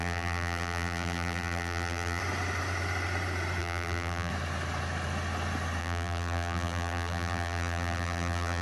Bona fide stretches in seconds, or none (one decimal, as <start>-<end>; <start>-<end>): 2.2-3.6; 4.3-5.8